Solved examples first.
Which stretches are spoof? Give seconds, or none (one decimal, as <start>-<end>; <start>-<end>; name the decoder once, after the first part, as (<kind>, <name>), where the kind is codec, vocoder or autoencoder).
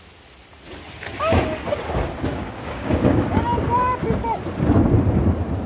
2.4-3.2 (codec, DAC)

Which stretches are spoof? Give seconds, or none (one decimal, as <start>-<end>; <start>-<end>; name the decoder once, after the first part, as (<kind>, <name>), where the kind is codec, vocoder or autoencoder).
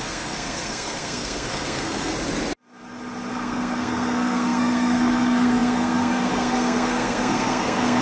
0.0-2.1 (codec, SNAC); 3.3-8.0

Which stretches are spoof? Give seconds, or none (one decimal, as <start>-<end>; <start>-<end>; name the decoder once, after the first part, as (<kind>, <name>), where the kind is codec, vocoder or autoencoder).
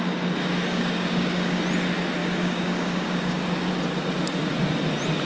0.7-1.6 (codec, DAC); 2.2-3.7